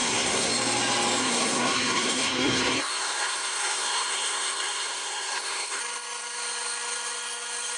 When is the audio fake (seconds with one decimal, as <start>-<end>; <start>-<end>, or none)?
0.0-0.5; 1.2-5.8